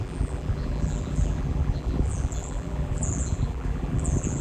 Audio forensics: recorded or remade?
remade